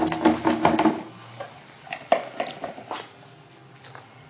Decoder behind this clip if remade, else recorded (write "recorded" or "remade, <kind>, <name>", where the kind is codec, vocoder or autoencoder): recorded